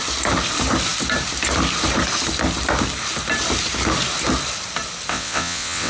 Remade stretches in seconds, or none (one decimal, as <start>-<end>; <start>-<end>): 5.1-5.9